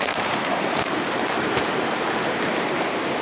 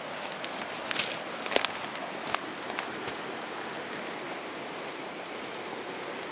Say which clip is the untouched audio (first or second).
second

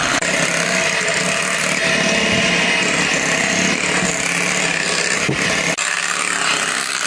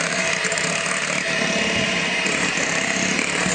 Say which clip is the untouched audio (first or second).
first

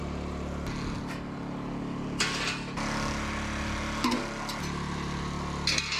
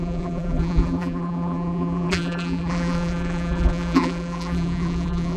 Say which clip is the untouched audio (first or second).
first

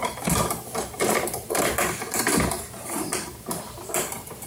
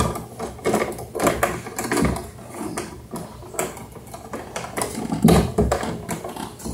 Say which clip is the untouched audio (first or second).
second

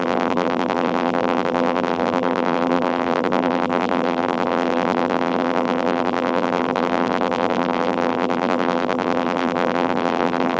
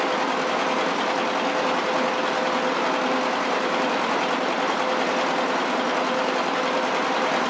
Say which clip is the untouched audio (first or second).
second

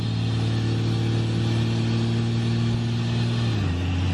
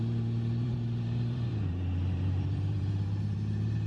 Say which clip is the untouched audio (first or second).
first